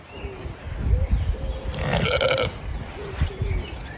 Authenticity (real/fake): real